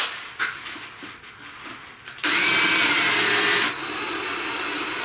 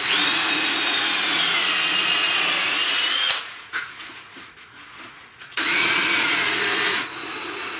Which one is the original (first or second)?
first